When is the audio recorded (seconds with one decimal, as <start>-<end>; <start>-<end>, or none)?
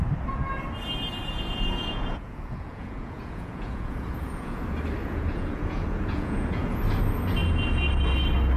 0.0-1.2; 4.6-5.0; 6.8-8.6